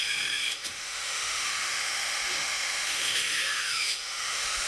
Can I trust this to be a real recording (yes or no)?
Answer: no